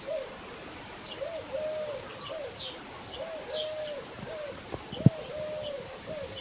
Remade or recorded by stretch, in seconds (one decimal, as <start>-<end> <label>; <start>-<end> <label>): 0.0-6.4 recorded